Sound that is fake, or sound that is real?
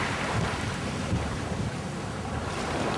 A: fake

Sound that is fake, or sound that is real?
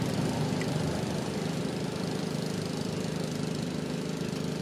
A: fake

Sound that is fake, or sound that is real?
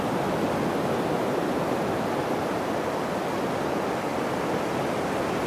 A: real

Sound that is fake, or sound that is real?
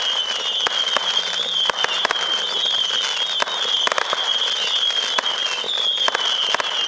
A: real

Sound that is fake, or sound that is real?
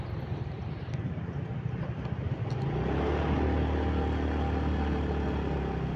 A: real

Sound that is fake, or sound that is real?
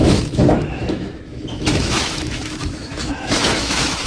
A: fake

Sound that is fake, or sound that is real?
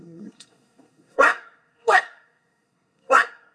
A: fake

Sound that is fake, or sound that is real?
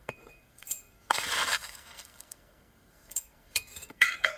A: fake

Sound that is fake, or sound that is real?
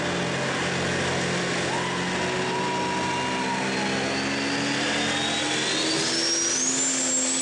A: real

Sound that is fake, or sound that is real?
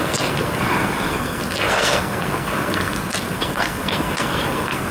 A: fake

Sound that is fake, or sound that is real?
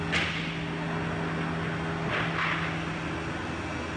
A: real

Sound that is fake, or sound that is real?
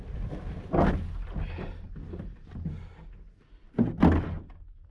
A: real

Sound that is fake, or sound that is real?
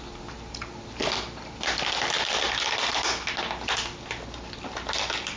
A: real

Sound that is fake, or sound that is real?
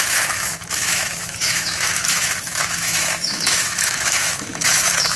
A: fake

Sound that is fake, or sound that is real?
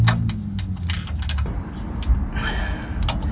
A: real